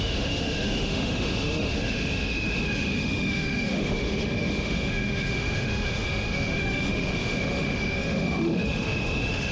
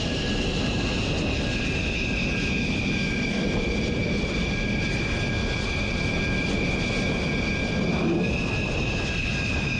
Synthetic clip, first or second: first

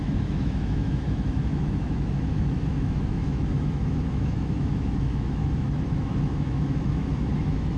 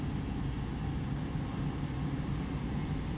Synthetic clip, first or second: first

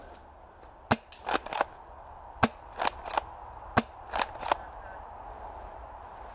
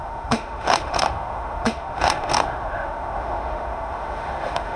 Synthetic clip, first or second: second